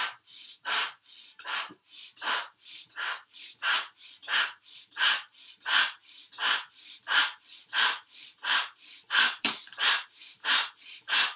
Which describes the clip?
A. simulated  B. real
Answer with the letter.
A